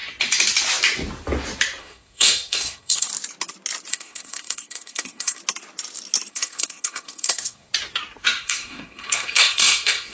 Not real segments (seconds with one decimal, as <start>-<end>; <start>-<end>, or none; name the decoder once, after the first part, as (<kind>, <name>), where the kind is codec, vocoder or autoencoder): 1.8-3.1 (codec, SNAC); 3.9-5.4; 6.3-7.7; 8.4-10.1